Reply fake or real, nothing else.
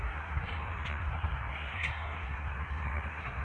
fake